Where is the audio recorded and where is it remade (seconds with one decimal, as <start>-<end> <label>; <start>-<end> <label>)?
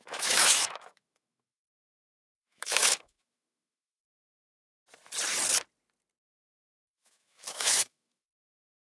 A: 0.0-4.3 remade; 4.3-6.6 recorded; 6.6-8.9 remade